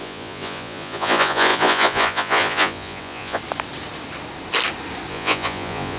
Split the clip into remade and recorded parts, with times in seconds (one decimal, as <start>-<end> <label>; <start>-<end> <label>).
0.0-3.4 remade; 3.4-5.1 recorded; 5.1-6.0 remade